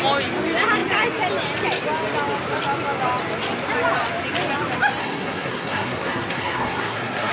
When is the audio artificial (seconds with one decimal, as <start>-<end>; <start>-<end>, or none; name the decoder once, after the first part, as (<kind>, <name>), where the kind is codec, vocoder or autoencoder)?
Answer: 5.0-7.3 (codec, SNAC)